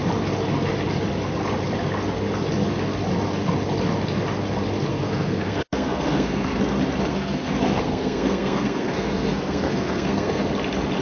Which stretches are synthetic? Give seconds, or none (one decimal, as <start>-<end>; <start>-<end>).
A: 4.9-6.6; 7.1-10.5